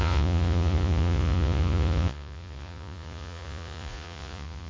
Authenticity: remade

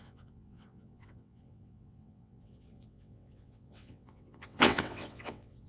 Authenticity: remade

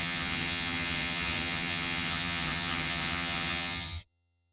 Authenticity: remade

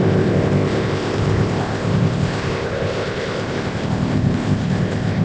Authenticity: remade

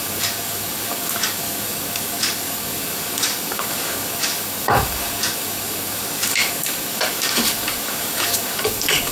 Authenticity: remade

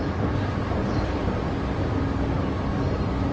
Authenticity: recorded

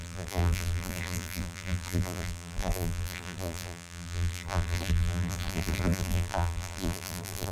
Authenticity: remade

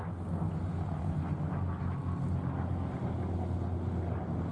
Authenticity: recorded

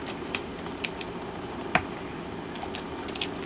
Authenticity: recorded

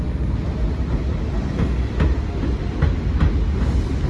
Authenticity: recorded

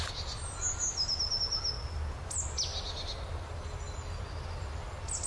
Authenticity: recorded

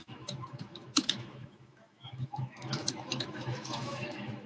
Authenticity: remade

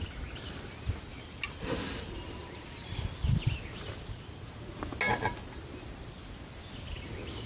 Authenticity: recorded